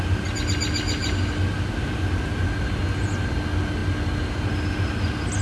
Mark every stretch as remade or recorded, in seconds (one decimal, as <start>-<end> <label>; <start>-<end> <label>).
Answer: 0.0-5.4 recorded